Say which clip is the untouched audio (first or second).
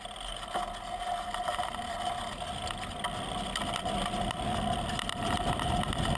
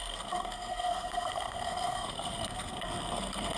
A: first